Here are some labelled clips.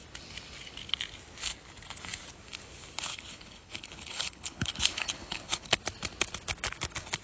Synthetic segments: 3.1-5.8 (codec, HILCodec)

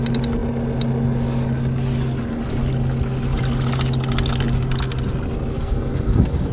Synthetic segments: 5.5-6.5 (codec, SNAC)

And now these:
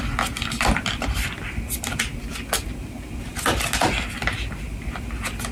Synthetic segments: none